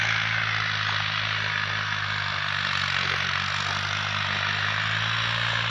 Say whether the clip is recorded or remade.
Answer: recorded